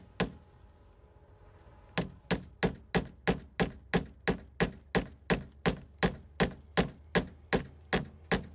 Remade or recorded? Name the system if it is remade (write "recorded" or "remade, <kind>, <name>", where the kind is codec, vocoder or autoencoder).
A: recorded